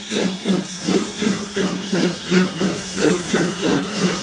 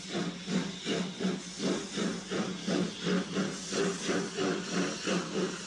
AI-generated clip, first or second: first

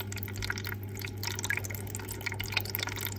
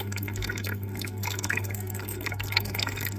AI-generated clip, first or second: second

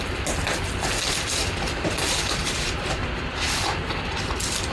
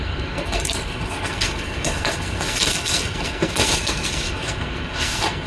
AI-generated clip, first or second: second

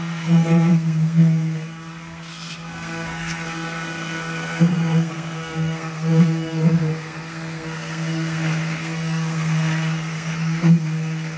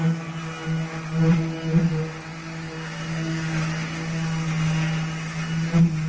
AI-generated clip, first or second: first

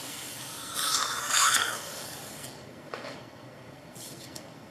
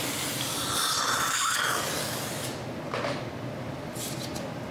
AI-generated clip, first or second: first